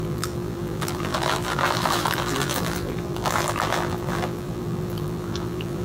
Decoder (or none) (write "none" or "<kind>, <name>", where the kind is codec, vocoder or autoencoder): vocoder, BigVGAN v2